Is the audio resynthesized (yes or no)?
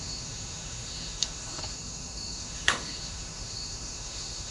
yes